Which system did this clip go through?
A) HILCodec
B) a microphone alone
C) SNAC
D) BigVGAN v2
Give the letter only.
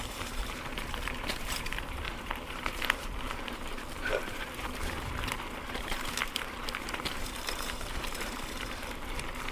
D